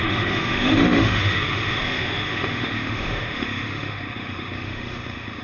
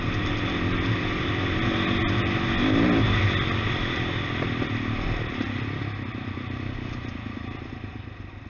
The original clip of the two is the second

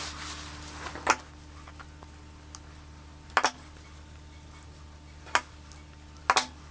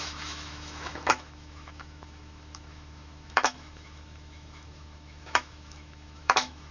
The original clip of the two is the first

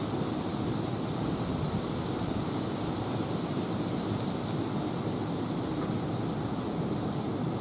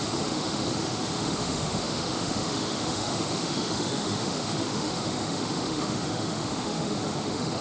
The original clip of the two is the first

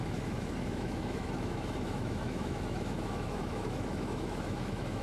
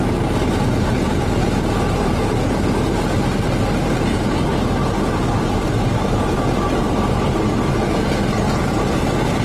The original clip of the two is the second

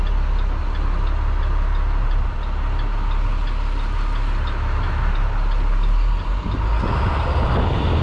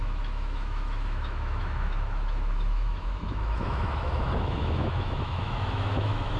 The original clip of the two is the first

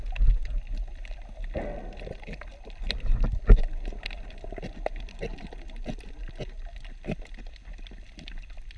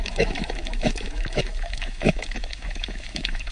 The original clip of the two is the first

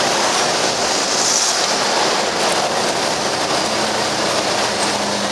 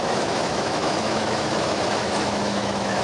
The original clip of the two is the first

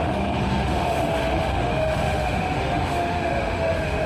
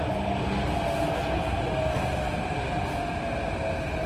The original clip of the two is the second